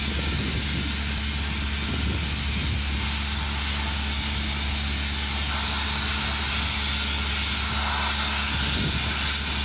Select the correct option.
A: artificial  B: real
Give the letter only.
B